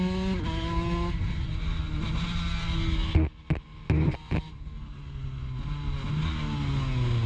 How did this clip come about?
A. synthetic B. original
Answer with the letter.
B